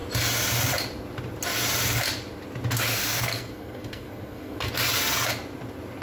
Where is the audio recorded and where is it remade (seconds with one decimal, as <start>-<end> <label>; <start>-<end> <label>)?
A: 0.0-2.9 recorded; 2.9-4.7 remade; 4.7-6.0 recorded

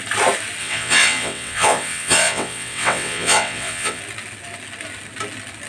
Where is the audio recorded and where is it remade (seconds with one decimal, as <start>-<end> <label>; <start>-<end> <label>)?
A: 0.0-0.6 recorded; 0.6-4.0 remade; 4.0-5.7 recorded

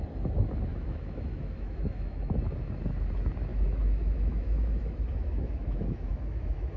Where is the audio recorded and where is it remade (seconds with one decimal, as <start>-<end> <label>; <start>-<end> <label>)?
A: 0.0-0.7 recorded; 0.7-2.3 remade; 2.3-3.5 recorded; 3.5-6.8 remade